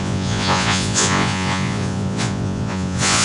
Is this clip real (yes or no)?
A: no